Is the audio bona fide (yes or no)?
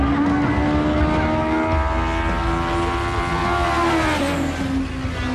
yes